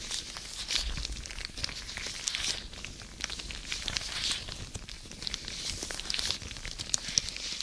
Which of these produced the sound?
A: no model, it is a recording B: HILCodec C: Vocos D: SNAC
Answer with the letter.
A